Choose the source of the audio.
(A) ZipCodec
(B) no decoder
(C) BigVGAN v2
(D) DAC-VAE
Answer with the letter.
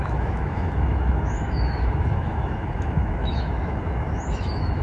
D